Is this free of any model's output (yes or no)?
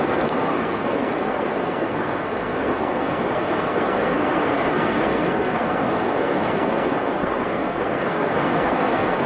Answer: no